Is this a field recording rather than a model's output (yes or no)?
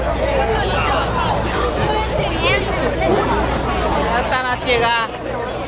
yes